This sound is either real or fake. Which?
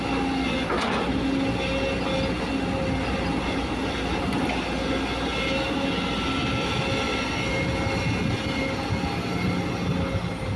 real